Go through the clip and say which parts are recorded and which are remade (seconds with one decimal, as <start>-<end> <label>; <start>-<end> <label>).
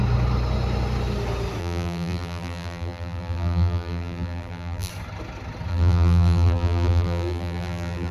0.0-1.6 recorded; 1.6-4.9 remade; 4.9-5.7 recorded; 5.7-8.1 remade